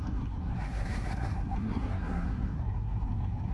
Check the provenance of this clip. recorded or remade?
remade